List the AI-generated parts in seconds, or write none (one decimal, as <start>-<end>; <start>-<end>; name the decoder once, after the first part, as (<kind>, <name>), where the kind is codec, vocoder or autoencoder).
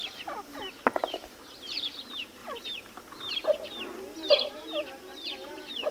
1.0-2.4 (vocoder, BigVGAN v2); 4.3-5.9